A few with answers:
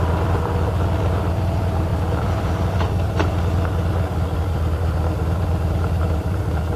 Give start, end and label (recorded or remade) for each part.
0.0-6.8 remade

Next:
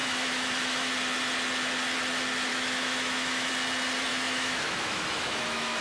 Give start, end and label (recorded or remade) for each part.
0.0-0.9 remade; 0.9-2.5 recorded; 2.5-3.5 remade; 3.5-4.1 recorded; 4.1-5.8 remade

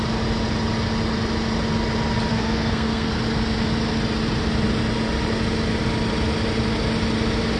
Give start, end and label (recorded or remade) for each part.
0.0-2.3 recorded; 2.3-3.1 remade; 3.1-7.6 recorded